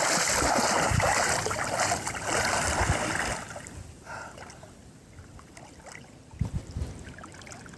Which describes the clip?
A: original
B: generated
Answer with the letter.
A